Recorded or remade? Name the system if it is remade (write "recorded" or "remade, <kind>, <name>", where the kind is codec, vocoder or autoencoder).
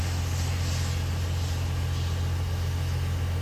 recorded